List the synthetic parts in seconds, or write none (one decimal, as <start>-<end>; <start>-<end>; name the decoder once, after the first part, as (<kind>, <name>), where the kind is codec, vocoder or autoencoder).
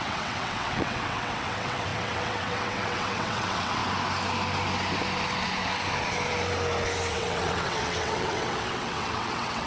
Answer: 0.0-3.8 (vocoder, WaveNeXt); 7.1-9.7